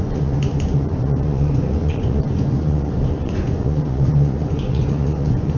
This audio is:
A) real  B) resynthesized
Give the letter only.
B